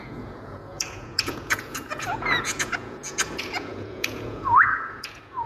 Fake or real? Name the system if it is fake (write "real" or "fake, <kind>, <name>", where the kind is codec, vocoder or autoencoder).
fake, vocoder, Vocos